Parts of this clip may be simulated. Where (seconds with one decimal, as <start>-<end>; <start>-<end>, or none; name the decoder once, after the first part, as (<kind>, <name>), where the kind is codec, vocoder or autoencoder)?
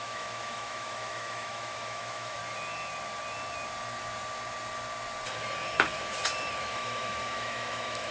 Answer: 0.0-2.4 (autoencoder, DAC-VAE); 6.6-8.1